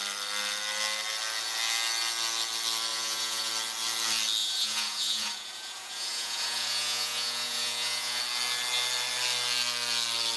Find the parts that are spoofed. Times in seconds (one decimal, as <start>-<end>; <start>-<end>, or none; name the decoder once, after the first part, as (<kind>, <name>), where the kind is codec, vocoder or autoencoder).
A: 2.9-3.5 (vocoder, Vocos); 4.4-8.2